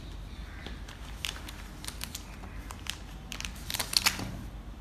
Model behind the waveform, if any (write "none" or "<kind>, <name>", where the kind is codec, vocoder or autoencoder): none